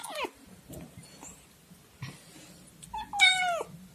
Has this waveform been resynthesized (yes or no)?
no